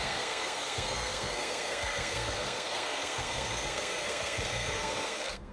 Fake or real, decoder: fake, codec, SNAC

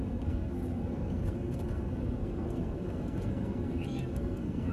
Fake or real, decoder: fake, codec, SNAC